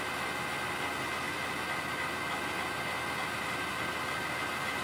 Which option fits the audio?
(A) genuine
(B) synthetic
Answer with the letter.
A